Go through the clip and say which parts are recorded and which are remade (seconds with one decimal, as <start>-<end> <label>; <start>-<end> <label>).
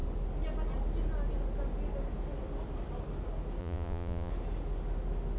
0.0-3.6 recorded; 3.6-4.3 remade; 4.3-5.4 recorded